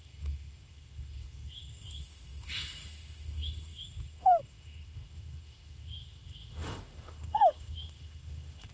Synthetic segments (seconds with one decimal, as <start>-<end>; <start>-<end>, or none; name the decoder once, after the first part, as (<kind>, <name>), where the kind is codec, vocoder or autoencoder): 0.0-8.7 (autoencoder, DAC-VAE)